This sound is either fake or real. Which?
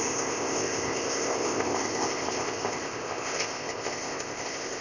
fake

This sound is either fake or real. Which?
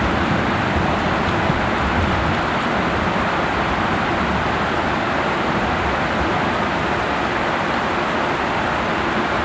real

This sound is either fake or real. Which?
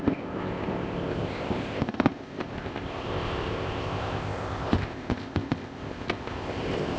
fake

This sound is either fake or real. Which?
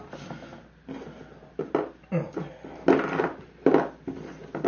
real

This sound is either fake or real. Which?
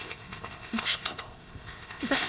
fake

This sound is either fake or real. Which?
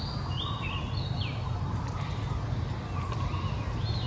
real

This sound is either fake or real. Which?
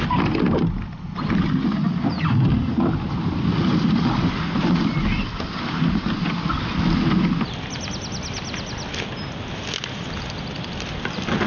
real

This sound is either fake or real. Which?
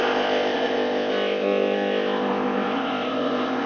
fake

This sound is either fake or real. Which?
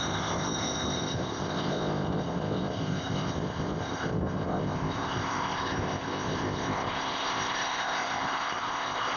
fake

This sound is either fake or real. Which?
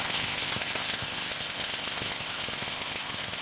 fake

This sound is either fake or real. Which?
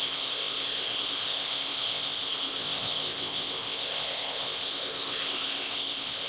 fake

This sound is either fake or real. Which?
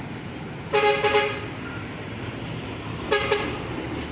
real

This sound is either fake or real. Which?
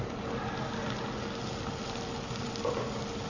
real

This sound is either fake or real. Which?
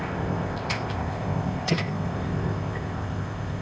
fake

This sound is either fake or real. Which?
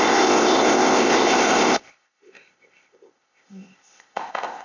fake